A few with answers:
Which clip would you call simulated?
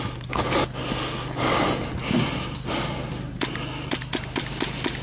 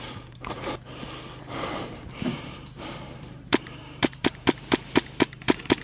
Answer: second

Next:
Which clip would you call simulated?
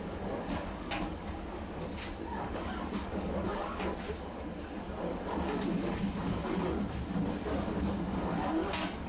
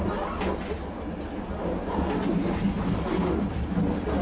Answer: first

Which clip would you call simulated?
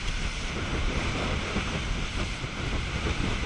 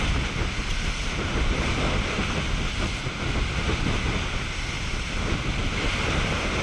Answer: first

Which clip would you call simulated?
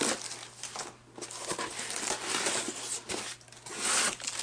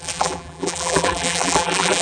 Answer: second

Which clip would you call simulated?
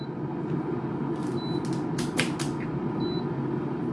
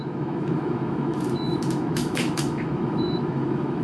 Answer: second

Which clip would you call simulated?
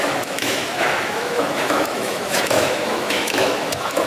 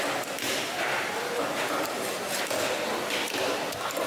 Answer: first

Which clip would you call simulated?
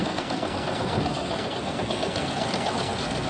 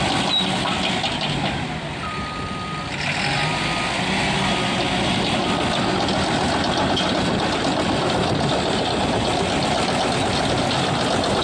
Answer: first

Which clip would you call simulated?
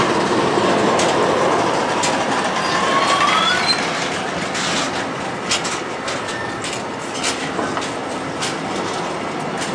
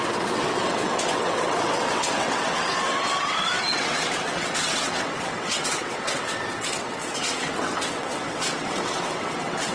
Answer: second